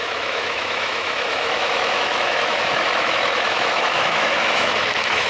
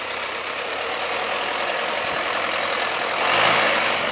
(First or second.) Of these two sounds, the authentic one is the second